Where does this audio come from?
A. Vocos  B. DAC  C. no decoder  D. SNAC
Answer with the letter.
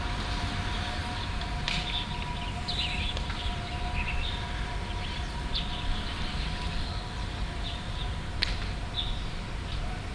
C